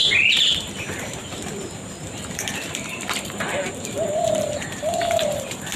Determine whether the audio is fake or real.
fake